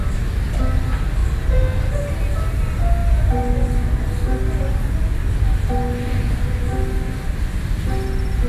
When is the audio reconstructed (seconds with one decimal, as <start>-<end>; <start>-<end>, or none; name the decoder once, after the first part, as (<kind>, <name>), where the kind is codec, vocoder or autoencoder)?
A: none